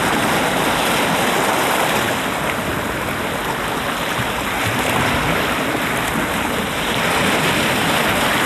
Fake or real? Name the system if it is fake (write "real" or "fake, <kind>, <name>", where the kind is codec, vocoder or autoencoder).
real